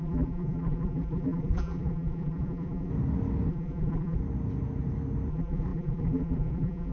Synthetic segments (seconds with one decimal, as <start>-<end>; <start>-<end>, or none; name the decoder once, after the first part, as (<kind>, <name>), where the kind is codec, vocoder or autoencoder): 0.0-2.9 (vocoder, BigVGAN v2); 3.5-4.2; 5.3-6.9